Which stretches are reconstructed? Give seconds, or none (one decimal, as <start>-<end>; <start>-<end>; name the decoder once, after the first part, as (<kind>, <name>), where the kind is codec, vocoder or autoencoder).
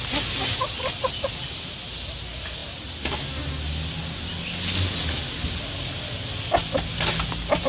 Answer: none